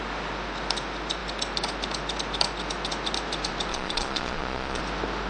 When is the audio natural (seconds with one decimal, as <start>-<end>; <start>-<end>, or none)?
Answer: 0.0-3.7; 4.8-5.3